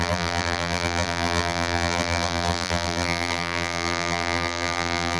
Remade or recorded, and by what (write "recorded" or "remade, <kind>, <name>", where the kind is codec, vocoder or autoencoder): remade, vocoder, BigVGAN v2